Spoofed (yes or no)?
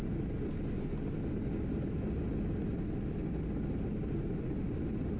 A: no